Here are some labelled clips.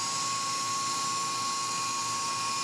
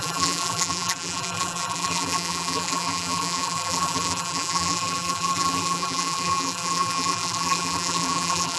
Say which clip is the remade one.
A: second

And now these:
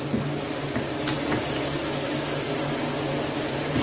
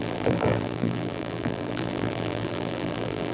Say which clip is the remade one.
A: second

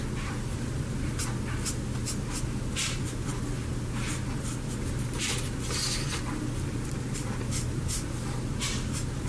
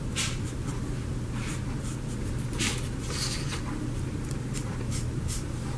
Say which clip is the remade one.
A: second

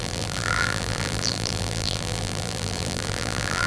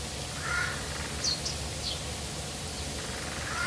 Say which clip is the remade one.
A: first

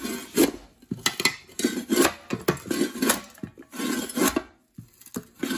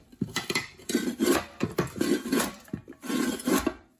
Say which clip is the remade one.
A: second